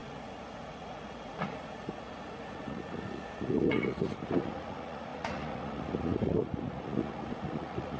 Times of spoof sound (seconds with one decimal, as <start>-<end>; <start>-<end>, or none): 0.0-8.0